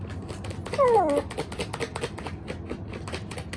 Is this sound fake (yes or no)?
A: no